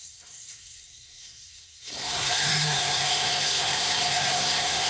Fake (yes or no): yes